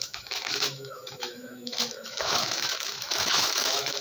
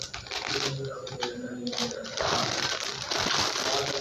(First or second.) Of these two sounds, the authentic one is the second